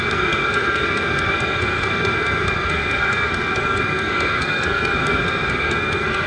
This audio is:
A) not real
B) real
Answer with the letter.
A